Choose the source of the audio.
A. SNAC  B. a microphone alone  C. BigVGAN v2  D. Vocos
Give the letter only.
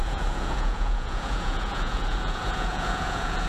D